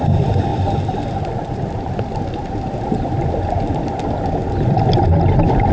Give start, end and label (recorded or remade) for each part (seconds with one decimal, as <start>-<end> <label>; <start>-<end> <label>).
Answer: 0.0-4.4 remade; 4.4-5.7 recorded